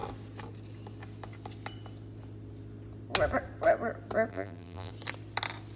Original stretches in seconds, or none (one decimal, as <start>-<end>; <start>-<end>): 0.0-4.3; 4.9-5.8